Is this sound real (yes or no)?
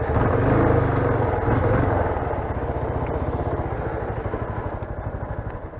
yes